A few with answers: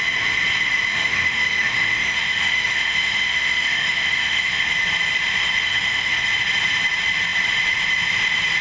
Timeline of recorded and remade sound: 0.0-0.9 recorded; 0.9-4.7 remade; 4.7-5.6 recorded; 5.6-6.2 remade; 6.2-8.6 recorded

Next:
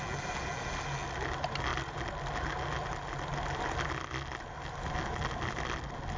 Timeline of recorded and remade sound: 0.0-6.2 recorded